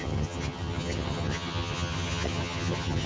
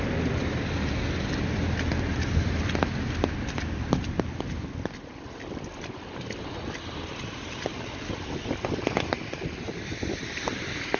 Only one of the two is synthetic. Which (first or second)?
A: first